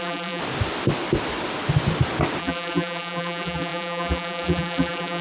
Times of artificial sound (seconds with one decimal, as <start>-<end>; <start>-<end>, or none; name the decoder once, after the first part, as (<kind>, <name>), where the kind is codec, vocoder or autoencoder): 0.0-0.4 (vocoder, BigVGAN v2); 2.4-5.2